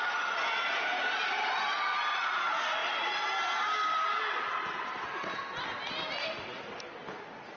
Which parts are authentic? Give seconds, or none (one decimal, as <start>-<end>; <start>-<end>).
0.0-0.9; 2.1-7.6